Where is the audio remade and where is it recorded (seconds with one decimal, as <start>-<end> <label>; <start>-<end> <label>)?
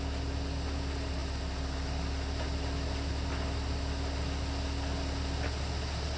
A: 0.0-6.2 recorded